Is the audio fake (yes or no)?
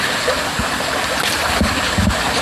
no